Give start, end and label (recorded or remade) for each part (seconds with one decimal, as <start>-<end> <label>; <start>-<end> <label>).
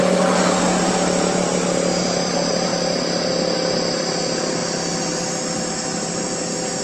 0.0-6.8 recorded